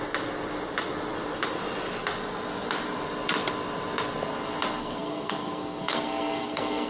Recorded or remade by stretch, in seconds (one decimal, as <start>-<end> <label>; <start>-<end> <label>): 0.0-4.8 recorded; 4.8-6.9 remade